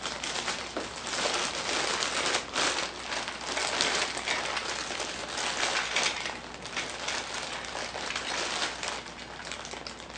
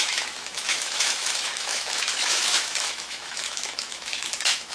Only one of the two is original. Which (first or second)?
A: first